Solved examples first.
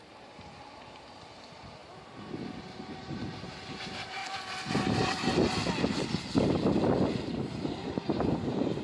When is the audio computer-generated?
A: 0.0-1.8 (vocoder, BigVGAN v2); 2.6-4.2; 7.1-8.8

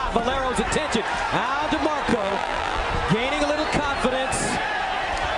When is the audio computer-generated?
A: 2.1-2.8 (vocoder, BigVGAN v2)

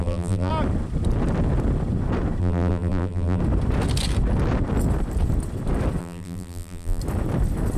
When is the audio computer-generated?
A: 0.0-0.5 (vocoder, BigVGAN v2); 2.4-3.4; 6.0-7.0